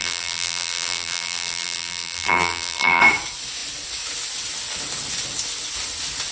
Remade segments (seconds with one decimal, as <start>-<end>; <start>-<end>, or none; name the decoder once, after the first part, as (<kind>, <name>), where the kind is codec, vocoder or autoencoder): 0.0-3.0 (vocoder, BigVGAN v2)

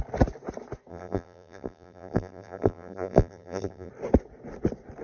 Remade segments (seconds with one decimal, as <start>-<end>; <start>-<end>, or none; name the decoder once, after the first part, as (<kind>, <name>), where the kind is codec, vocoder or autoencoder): 0.9-3.9 (vocoder, BigVGAN v2)

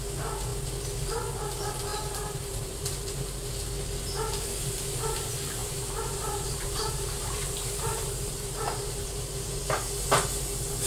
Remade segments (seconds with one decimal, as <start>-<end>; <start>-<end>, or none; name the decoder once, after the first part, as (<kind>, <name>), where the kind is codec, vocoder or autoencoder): 1.9-3.5 (vocoder, BigVGAN v2); 5.6-9.6

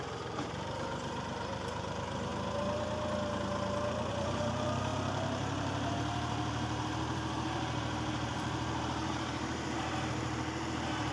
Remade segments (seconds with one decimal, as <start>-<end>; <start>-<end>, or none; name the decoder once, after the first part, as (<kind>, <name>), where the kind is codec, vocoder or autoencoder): 0.0-2.3 (vocoder, BigVGAN v2); 4.1-11.1

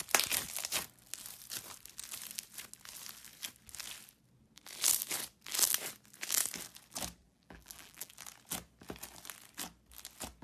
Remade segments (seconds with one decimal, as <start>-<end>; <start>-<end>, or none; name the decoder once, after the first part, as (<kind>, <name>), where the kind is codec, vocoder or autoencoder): 7.2-8.1 (vocoder, BigVGAN v2)

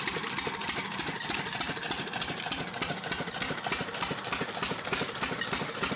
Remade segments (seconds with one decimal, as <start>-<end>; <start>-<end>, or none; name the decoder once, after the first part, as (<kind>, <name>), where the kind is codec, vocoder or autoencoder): none